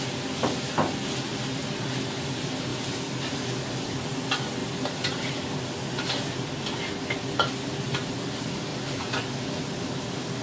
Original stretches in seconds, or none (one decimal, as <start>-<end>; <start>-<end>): 0.0-10.4